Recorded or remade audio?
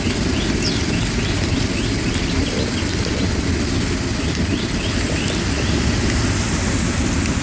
recorded